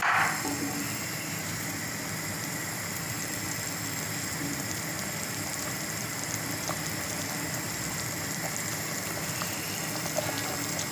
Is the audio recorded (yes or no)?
no